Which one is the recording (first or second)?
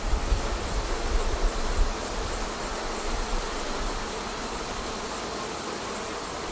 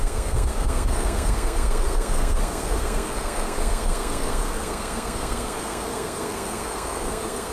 first